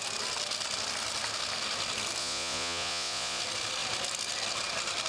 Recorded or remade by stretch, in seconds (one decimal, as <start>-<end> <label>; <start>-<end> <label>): 0.0-2.2 recorded; 2.2-3.4 remade; 3.4-5.1 recorded

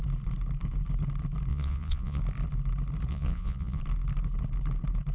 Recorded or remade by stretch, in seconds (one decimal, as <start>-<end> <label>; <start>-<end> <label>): 0.0-1.5 recorded; 1.5-2.2 remade; 2.2-3.1 recorded; 3.1-3.8 remade; 3.8-5.1 recorded

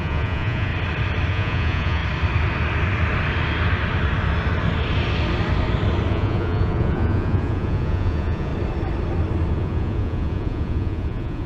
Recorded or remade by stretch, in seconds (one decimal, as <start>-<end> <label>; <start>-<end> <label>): 0.0-0.7 remade; 0.7-1.3 recorded; 1.3-2.0 remade; 2.0-6.1 recorded; 6.1-8.5 remade; 8.5-9.5 recorded; 9.5-11.5 remade